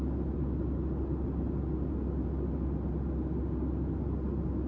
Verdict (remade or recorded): recorded